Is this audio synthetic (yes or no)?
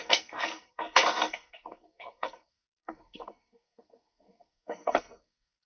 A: yes